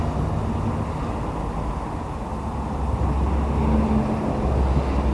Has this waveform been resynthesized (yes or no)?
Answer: no